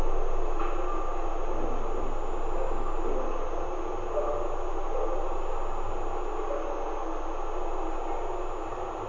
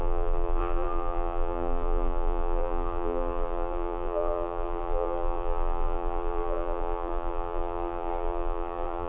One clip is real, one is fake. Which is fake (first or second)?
second